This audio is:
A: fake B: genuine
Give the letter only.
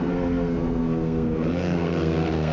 A